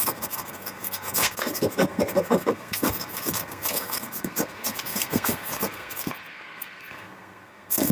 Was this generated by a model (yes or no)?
yes